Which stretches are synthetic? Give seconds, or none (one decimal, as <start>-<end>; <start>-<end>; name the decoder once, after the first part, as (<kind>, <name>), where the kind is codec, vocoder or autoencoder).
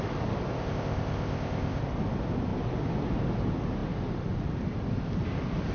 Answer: 0.6-1.8 (codec, ZipCodec)